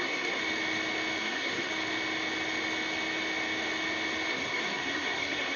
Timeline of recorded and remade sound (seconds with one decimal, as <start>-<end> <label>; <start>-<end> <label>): 0.0-0.4 remade; 0.4-1.2 recorded; 1.2-1.7 remade; 1.7-4.3 recorded; 4.3-5.6 remade

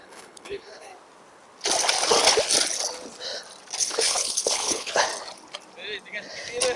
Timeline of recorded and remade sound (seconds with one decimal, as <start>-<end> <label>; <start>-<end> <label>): 0.0-0.9 remade; 0.9-3.8 recorded; 3.8-5.1 remade; 5.1-6.8 recorded

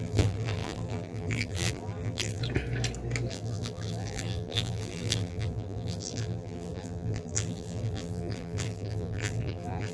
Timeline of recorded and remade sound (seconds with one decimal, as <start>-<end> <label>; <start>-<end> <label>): 0.0-2.4 remade; 2.4-3.3 recorded; 3.3-9.9 remade

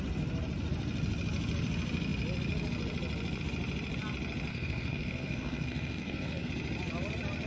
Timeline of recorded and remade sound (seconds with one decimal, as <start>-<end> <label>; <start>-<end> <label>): 0.0-4.5 recorded; 4.5-6.5 remade; 6.5-7.5 recorded